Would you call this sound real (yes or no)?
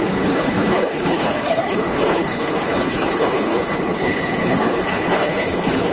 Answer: no